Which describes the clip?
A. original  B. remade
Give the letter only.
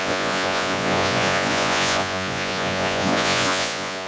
B